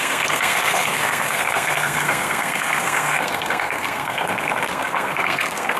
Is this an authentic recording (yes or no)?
no